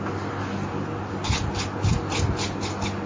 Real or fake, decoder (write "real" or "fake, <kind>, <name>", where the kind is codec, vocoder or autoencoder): real